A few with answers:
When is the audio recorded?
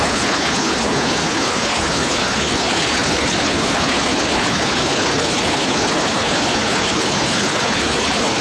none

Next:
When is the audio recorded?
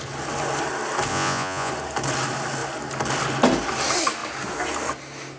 0.0-1.1; 1.7-5.4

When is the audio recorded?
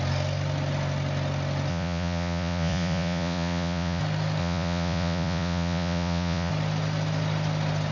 0.0-1.7; 4.0-4.4; 6.5-7.9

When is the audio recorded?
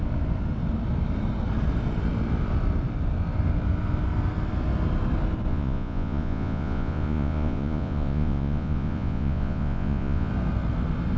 0.0-5.5; 10.3-11.2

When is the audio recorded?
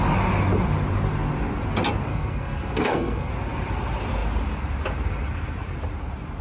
0.0-2.1; 3.3-6.4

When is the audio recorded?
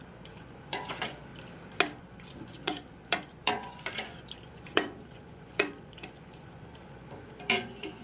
1.3-2.0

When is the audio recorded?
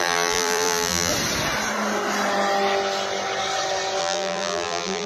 1.1-4.0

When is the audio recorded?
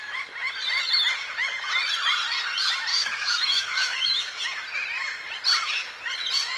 0.0-2.9; 4.4-6.6